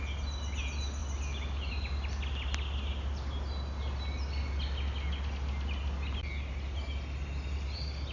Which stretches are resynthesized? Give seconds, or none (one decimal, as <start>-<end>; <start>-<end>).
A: none